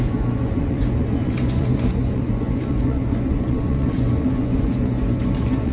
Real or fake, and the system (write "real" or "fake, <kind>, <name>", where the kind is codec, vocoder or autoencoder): fake, vocoder, Vocos